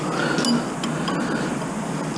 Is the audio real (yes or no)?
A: yes